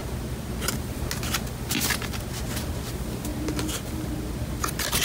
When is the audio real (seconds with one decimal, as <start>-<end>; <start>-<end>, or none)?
0.0-5.0